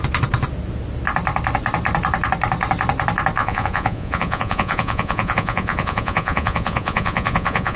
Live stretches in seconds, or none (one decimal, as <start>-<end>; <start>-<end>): 0.0-3.4